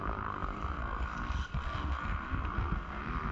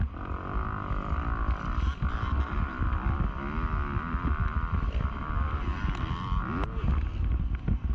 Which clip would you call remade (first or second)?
first